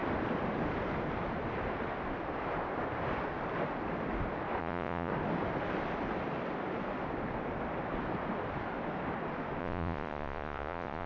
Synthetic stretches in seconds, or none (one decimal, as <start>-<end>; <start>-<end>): 4.6-5.1; 9.6-11.1